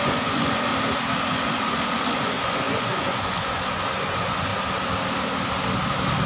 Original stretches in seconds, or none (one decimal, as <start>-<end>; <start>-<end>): 0.7-1.3; 4.5-6.3